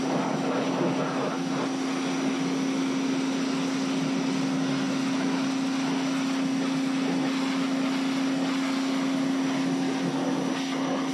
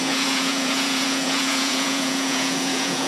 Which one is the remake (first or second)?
second